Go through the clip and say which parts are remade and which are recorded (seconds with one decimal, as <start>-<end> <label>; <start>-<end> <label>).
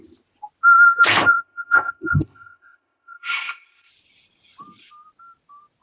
0.0-1.3 recorded; 1.3-3.9 remade; 3.9-5.8 recorded